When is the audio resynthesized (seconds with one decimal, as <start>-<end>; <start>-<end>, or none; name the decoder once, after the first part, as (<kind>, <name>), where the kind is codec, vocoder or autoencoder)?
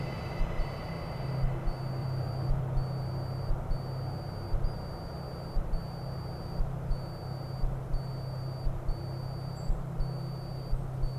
2.0-2.6 (vocoder, BigVGAN v2)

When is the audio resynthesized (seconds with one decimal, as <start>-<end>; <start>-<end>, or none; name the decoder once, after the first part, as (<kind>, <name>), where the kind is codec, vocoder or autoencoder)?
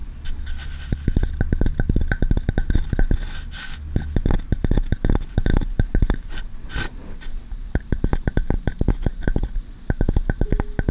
5.5-9.7 (vocoder, BigVGAN v2)